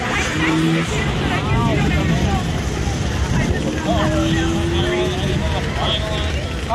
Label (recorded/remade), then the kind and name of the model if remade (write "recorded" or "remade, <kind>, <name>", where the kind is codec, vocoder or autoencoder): recorded